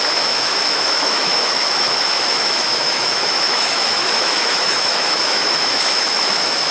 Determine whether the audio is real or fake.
fake